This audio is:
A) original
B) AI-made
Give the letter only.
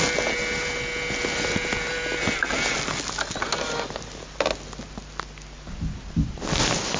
A